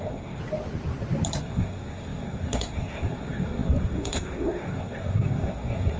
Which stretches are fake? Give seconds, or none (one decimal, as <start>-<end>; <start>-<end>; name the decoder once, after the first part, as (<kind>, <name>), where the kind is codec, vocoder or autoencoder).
0.0-0.4 (codec, SNAC); 1.4-6.0